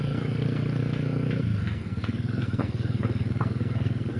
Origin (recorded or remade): remade